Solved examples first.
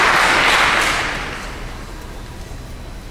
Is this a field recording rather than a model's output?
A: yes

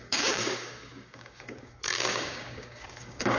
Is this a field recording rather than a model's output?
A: no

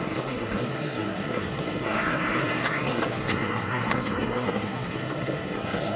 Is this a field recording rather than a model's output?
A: no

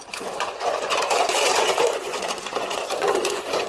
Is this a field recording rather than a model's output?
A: no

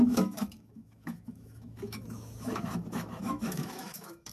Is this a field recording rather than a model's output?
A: no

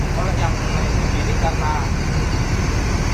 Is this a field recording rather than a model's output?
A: yes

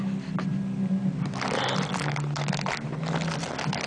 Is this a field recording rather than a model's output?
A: yes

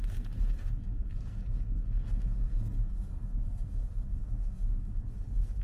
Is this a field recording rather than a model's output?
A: no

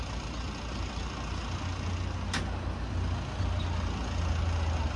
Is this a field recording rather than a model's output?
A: yes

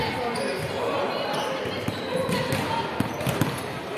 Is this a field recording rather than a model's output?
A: yes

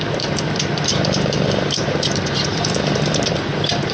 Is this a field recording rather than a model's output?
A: no